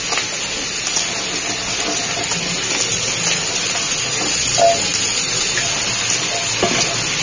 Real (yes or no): yes